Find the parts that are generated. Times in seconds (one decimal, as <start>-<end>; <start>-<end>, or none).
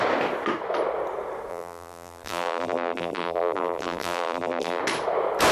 1.5-4.8